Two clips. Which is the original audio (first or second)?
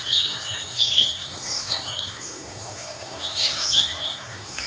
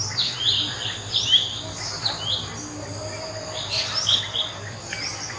second